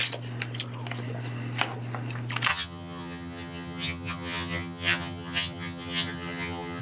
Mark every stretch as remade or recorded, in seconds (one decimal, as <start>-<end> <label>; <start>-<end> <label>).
0.0-2.5 recorded; 2.5-6.8 remade